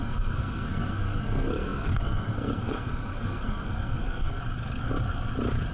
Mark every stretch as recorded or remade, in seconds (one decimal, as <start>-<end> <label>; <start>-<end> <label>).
0.0-4.4 remade; 4.4-5.7 recorded